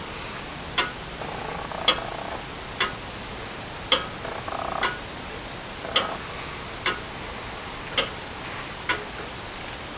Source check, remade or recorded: recorded